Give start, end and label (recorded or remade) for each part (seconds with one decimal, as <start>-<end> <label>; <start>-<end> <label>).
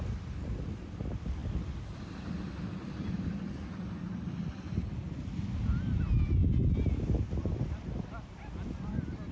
0.0-9.3 recorded